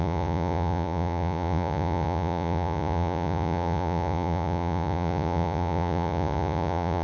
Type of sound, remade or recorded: remade